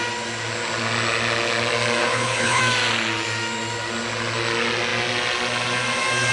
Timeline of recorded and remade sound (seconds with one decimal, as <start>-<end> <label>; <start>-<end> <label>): 0.0-2.0 recorded; 2.0-2.6 remade; 2.6-6.3 recorded

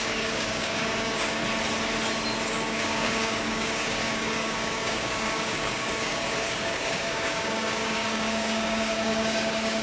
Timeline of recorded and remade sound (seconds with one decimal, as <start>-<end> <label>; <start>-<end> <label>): 0.0-1.4 remade; 1.4-2.5 recorded; 2.5-9.8 remade

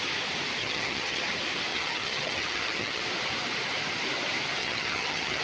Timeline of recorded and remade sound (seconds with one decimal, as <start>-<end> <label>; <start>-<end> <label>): 0.0-0.6 recorded; 0.6-1.2 remade; 1.2-1.7 recorded; 1.7-3.0 remade; 3.0-4.6 recorded; 4.6-5.4 remade

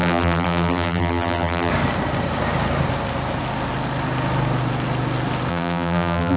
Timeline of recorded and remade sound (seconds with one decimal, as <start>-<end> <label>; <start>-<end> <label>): 0.0-1.7 remade; 1.7-5.5 recorded; 5.5-6.4 remade

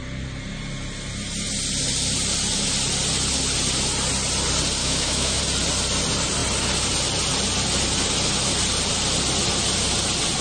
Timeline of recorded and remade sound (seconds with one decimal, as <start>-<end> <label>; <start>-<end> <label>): 0.0-4.8 recorded; 4.8-5.4 remade; 5.4-10.4 recorded

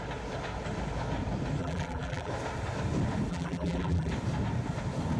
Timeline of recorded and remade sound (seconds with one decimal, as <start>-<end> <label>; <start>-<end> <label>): 0.0-1.6 recorded; 1.6-2.3 remade; 2.3-3.3 recorded; 3.3-4.1 remade; 4.1-5.2 recorded